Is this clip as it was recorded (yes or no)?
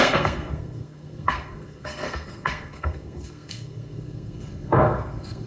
no